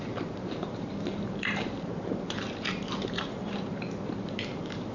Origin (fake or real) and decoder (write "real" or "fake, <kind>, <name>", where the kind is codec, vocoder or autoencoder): fake, vocoder, BigVGAN v2